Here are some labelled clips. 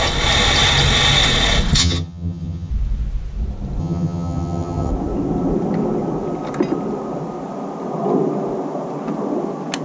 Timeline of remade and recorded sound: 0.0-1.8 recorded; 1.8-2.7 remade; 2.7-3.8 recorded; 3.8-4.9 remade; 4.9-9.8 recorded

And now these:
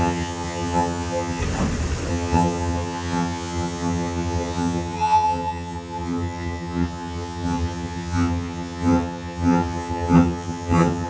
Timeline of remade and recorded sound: 0.0-1.4 remade; 1.4-2.1 recorded; 2.1-11.1 remade